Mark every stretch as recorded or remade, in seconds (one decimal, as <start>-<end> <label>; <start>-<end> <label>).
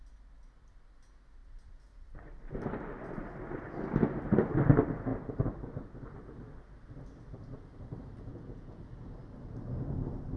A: 0.0-8.3 recorded; 8.3-8.8 remade; 8.8-10.4 recorded